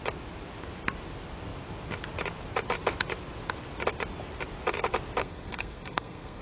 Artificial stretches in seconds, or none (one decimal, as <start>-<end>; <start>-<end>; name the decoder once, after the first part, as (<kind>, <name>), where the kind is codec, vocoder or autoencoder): 5.2-6.4 (codec, SNAC)